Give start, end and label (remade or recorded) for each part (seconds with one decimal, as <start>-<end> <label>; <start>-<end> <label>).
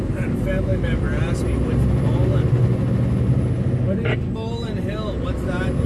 0.0-5.9 recorded